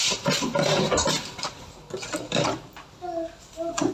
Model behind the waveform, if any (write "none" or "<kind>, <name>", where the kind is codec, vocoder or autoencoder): none